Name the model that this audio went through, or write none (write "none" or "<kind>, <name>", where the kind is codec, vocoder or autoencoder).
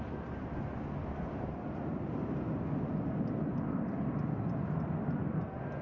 none